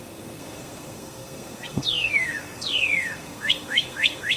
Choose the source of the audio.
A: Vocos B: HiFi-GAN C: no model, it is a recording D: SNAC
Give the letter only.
D